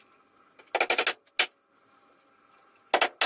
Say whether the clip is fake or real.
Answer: real